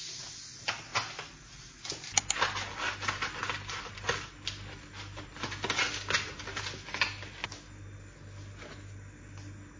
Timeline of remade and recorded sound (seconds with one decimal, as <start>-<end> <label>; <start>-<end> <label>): 0.0-9.8 recorded